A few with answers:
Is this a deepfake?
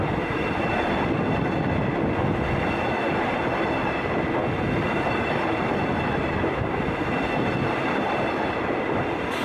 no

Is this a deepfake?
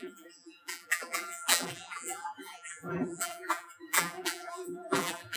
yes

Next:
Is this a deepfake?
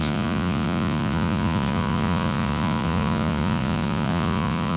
yes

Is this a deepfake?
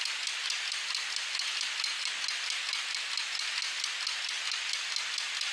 no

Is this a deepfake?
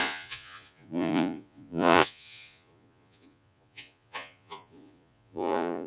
yes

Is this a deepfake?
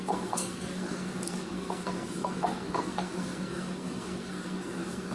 yes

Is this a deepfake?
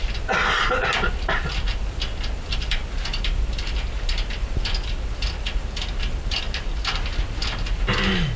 no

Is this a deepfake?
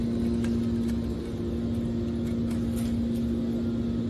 no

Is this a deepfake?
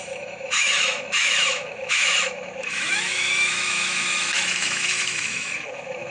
yes